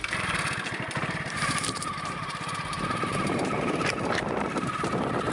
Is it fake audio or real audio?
fake